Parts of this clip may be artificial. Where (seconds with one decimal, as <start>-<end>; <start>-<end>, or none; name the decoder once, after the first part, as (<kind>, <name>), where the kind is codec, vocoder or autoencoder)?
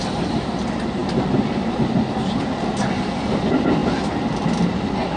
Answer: none